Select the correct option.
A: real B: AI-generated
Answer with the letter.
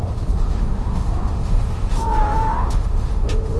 B